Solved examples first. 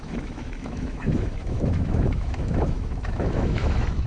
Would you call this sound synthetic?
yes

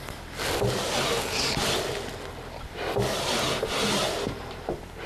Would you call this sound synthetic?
no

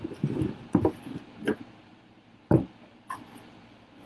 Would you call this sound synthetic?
yes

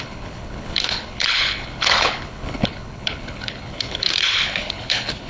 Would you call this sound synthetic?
yes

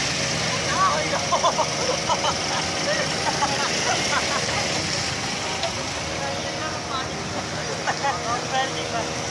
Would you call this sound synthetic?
no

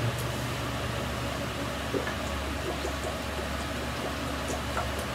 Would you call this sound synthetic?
no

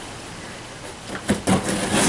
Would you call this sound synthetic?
no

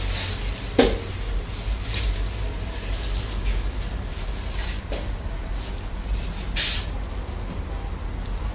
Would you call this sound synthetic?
no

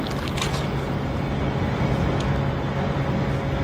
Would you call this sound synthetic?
no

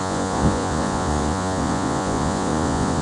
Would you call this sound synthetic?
yes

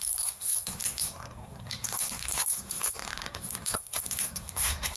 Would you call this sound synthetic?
yes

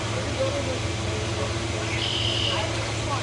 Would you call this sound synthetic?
no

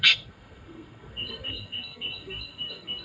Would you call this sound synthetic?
yes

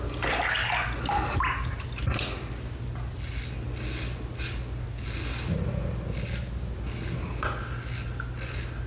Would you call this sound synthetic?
no